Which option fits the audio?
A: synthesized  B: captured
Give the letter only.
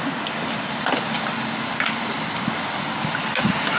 B